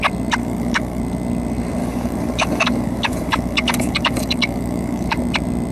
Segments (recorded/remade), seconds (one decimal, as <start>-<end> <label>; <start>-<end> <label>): 0.0-0.4 recorded; 0.4-1.0 remade; 1.0-1.8 recorded; 1.8-5.2 remade; 5.2-5.7 recorded